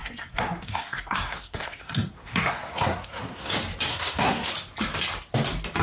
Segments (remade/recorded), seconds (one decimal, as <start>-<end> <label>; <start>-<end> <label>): 0.0-3.5 remade; 3.5-3.9 recorded; 3.9-4.5 remade; 4.5-5.8 recorded